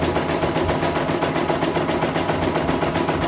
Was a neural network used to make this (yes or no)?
no